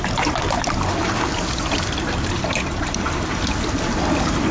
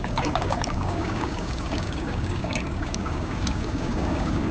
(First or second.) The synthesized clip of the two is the second